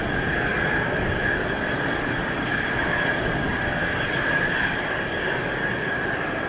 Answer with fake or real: real